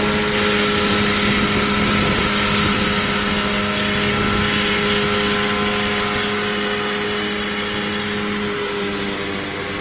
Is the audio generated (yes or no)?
no